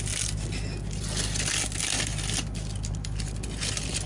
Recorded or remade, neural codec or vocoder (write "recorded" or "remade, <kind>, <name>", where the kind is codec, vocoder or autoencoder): recorded